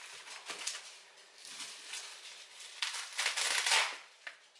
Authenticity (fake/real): real